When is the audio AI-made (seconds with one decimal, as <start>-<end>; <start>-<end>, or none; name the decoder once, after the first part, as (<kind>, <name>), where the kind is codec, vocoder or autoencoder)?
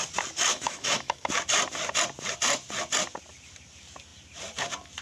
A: 0.5-1.3 (autoencoder, DAC-VAE)